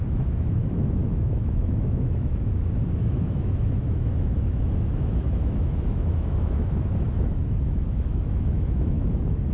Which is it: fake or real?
fake